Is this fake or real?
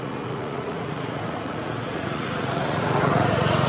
fake